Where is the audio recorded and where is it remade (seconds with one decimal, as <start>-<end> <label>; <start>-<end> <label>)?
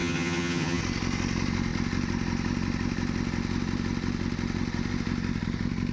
0.0-0.8 remade; 0.8-5.9 recorded